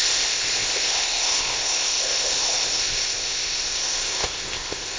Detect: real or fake fake